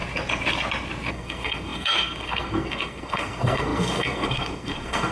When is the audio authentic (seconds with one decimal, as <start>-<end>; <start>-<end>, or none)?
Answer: 0.0-1.1